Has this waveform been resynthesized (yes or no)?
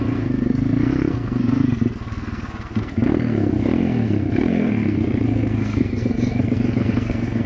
yes